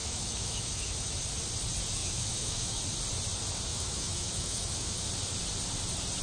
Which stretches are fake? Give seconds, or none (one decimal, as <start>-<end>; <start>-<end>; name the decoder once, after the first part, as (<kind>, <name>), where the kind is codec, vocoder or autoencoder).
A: 0.0-1.2 (autoencoder, DAC-VAE); 2.0-2.8; 3.7-5.1